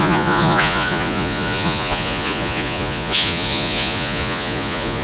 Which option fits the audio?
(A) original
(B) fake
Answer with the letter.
B